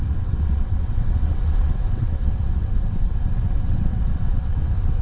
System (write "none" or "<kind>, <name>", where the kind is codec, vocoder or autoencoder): vocoder, WaveNeXt